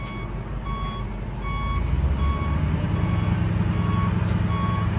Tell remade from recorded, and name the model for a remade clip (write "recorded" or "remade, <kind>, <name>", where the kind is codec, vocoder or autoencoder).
recorded